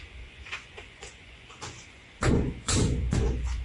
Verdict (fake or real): fake